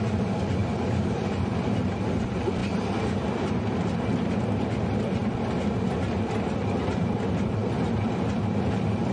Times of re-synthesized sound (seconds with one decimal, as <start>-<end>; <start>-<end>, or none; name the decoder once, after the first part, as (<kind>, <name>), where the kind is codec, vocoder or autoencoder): none